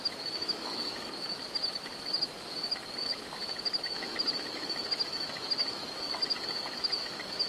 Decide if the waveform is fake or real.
fake